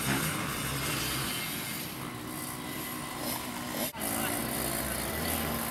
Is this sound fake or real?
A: real